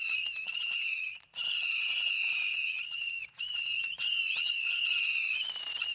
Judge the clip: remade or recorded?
remade